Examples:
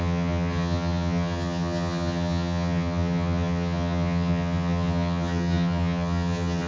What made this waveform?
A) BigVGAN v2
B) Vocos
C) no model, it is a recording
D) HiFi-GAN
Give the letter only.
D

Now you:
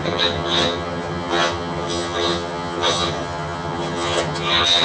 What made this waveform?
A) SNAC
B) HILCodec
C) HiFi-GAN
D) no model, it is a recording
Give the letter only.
C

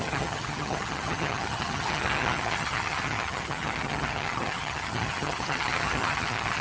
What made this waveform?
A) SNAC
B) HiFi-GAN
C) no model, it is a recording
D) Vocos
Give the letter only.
B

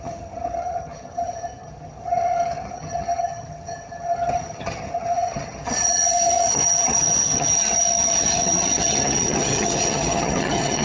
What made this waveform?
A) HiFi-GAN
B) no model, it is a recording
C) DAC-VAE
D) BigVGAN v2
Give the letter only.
A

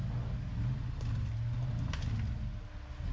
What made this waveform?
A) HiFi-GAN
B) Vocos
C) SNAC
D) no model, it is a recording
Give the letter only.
D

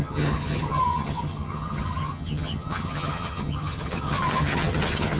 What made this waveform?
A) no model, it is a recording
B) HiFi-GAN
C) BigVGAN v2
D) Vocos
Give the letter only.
B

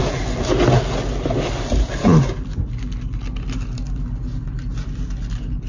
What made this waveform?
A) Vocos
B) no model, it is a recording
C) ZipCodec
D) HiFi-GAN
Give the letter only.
B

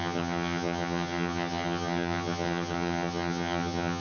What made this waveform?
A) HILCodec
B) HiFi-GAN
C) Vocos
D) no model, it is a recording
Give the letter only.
B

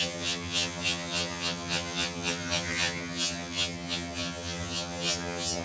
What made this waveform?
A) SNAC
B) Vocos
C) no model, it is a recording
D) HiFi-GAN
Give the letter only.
D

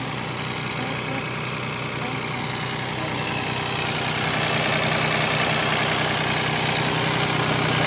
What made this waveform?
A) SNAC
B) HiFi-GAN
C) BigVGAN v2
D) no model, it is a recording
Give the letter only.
D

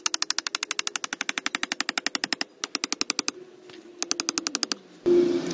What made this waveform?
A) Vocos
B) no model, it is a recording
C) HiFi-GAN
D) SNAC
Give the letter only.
B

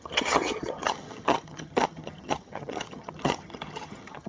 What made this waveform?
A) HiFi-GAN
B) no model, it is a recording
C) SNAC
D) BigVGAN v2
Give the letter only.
A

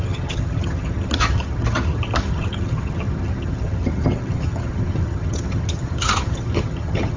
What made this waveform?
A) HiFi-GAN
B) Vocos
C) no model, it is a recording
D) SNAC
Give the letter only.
A